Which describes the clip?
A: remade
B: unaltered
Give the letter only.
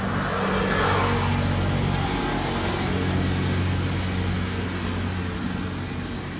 B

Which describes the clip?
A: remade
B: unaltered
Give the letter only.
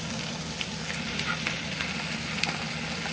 B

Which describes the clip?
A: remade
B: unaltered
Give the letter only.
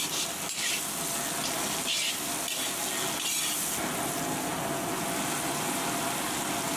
B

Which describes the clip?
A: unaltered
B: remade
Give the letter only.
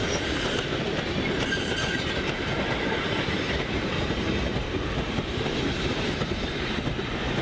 B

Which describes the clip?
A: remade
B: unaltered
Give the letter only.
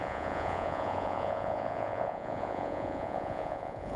A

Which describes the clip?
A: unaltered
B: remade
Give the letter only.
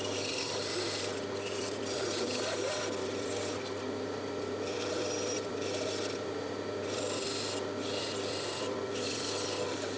B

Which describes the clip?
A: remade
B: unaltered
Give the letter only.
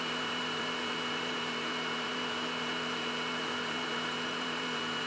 A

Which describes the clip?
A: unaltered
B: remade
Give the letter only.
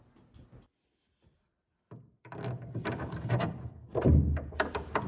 A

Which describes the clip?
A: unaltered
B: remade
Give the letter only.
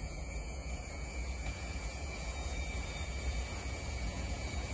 B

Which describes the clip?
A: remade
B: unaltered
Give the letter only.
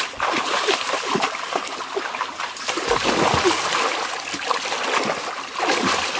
B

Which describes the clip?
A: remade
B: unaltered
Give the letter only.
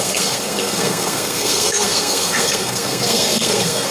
A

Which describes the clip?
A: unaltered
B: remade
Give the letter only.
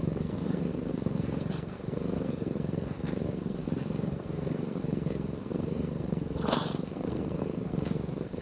B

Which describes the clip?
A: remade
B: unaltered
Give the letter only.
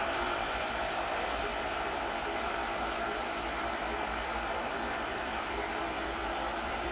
A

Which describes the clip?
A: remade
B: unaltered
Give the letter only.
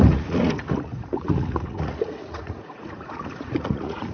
A